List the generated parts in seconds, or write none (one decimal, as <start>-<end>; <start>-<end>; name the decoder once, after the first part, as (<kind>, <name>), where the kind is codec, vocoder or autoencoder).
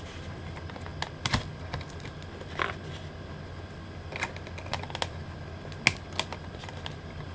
none